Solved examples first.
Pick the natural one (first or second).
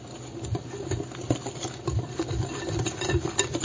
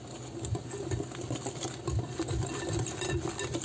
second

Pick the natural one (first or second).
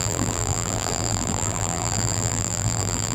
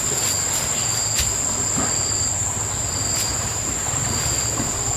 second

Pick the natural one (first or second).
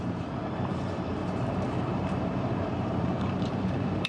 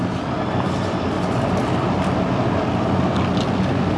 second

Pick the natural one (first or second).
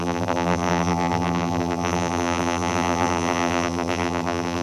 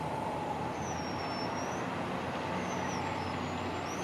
second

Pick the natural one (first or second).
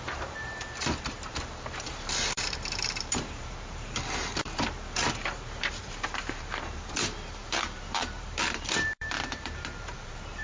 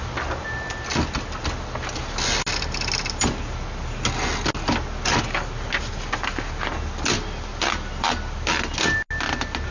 second